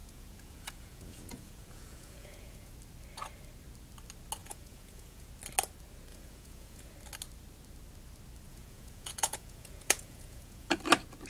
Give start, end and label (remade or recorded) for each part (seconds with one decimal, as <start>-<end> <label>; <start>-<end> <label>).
0.0-2.7 remade; 2.7-4.4 recorded; 4.4-5.3 remade; 5.3-6.1 recorded; 6.1-6.9 remade; 6.9-8.5 recorded; 8.5-10.8 remade; 10.8-11.3 recorded